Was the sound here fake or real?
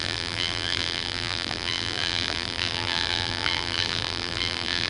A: fake